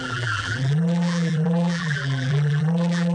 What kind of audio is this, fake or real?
fake